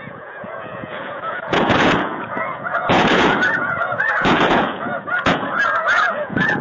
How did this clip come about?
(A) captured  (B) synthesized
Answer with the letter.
B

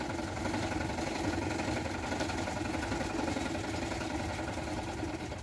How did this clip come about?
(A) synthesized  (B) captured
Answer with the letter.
B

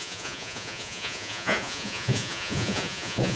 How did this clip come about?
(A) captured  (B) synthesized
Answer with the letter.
B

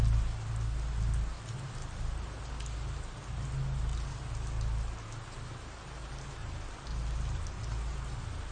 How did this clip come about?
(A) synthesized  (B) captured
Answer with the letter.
B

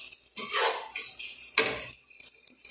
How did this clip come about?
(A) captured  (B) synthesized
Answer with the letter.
A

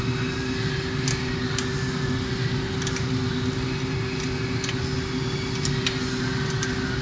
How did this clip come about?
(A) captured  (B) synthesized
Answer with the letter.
A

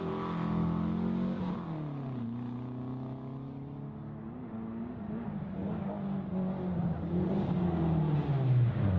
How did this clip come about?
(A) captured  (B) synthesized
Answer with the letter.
A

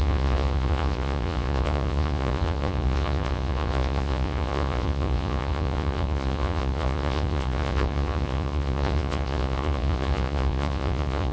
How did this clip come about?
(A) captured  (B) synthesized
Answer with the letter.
B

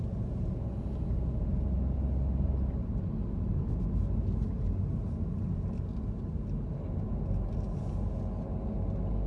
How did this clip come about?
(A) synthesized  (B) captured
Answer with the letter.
B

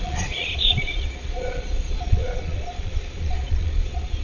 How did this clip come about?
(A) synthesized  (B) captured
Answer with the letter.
A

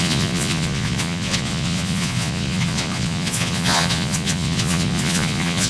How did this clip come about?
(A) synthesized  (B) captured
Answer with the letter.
A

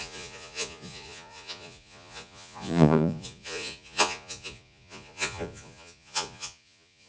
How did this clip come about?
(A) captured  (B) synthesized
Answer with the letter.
B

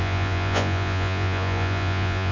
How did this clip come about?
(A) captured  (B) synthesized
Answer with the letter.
B